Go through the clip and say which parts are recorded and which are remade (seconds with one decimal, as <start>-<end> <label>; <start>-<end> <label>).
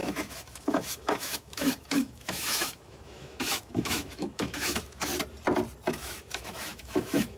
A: 0.0-5.1 remade; 5.1-5.9 recorded; 5.9-7.4 remade